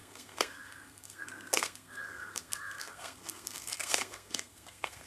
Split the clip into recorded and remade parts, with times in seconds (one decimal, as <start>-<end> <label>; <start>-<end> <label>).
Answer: 0.0-5.1 remade